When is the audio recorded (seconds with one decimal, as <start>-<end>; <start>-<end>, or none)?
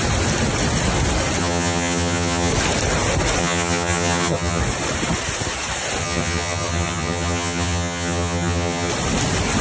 0.0-1.4; 2.5-3.4; 4.6-6.0; 8.9-9.6